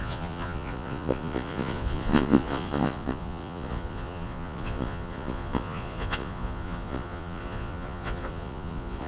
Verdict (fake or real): fake